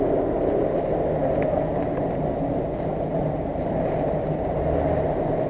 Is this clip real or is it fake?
real